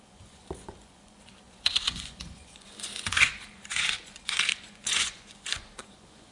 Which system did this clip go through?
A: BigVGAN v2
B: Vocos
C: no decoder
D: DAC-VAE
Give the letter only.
B